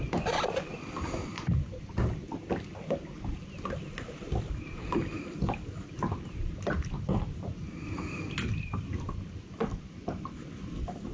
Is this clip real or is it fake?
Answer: fake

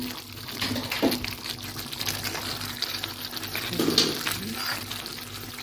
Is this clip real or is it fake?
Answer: real